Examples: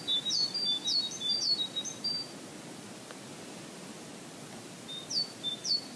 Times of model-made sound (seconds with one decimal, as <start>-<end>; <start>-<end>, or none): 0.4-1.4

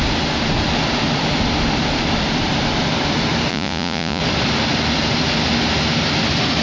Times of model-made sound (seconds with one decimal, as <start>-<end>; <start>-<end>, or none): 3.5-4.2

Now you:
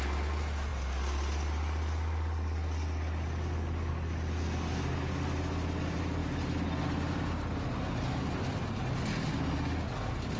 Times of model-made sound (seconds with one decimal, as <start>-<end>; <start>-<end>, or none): none

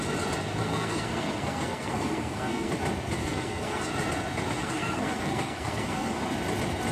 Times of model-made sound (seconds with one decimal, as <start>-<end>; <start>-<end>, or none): 0.6-2.7; 3.2-3.8; 4.6-6.2

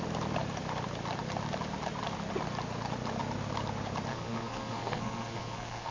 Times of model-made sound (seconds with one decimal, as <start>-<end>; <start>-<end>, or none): 4.1-5.9

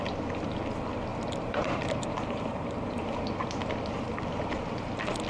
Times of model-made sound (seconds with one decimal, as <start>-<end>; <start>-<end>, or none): 1.1-3.3

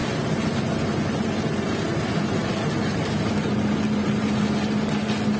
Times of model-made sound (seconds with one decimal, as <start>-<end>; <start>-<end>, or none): 1.9-4.4